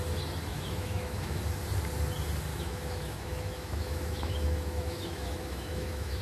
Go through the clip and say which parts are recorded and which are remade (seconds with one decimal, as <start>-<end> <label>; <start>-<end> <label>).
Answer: 0.0-0.5 recorded; 0.5-1.4 remade; 1.4-2.5 recorded; 2.5-6.2 remade